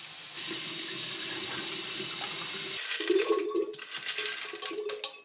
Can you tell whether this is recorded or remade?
recorded